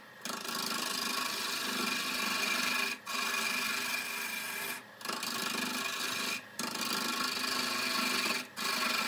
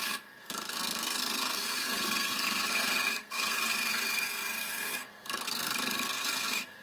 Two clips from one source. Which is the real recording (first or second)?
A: first